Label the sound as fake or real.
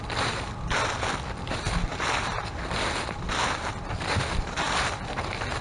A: real